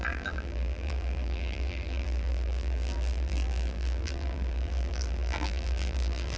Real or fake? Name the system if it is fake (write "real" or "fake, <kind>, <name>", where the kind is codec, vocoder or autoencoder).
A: fake, vocoder, BigVGAN v2